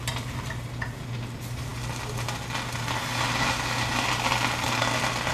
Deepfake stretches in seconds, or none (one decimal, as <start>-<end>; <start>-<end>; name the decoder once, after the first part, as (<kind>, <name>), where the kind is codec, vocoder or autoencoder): none